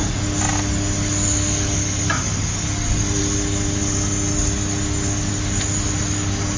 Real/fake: real